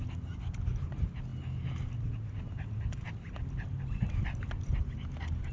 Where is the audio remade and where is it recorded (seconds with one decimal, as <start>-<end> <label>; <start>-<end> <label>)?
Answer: 0.0-5.5 recorded